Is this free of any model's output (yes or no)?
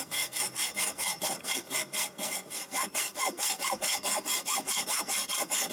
no